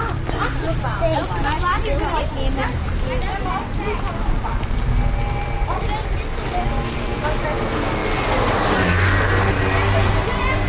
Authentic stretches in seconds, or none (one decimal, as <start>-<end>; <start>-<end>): 0.0-10.7